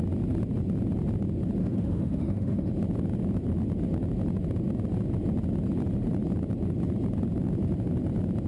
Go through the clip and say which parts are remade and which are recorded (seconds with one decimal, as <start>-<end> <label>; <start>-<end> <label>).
0.0-1.6 recorded; 1.6-2.7 remade; 2.7-8.5 recorded